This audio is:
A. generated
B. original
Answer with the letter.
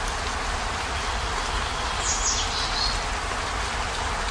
B